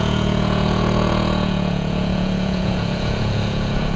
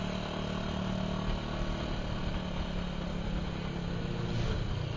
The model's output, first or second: first